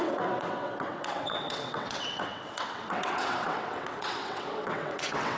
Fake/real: fake